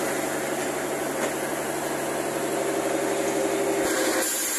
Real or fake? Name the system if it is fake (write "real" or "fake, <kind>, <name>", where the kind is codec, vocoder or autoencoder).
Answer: real